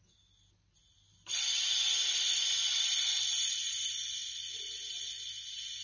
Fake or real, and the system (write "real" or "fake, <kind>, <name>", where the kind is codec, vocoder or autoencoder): real